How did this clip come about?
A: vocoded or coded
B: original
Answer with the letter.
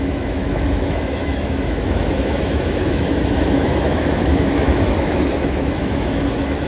A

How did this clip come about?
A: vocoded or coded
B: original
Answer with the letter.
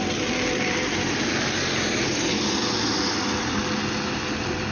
B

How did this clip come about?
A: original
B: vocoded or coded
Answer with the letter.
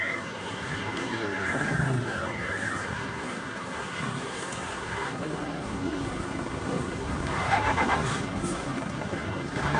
B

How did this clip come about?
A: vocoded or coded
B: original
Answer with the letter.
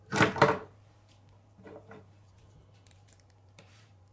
A